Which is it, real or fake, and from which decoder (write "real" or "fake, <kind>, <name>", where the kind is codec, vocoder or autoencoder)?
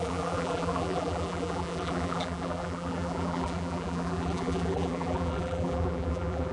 fake, vocoder, BigVGAN v2